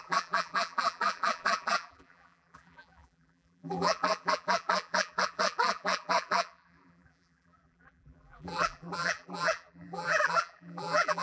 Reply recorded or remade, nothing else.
remade